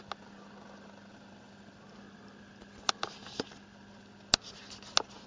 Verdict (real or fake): real